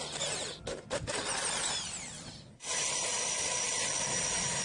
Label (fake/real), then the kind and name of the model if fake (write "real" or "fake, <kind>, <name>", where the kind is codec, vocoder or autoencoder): real